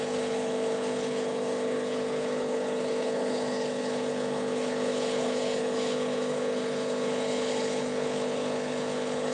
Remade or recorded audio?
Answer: remade